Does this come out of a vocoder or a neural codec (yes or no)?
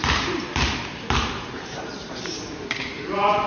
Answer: yes